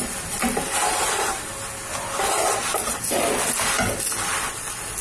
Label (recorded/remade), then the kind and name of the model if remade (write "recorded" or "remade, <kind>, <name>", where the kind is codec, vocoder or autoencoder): recorded